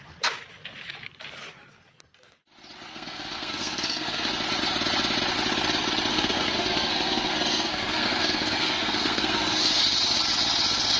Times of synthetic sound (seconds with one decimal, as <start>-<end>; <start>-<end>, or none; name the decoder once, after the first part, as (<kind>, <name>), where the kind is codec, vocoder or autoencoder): 2.9-4.3 (codec, SNAC); 6.1-9.8